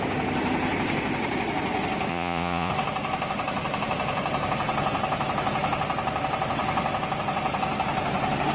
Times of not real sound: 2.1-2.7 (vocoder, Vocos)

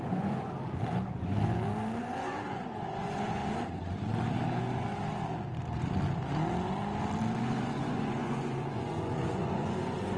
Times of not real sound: 0.0-0.5 (vocoder, Vocos); 2.0-3.4; 7.6-10.2